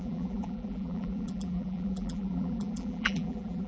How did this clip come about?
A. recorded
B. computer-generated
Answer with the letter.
B